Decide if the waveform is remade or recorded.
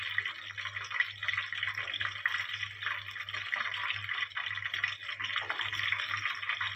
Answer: recorded